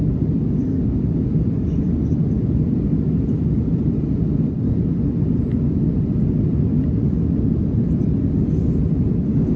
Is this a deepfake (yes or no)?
no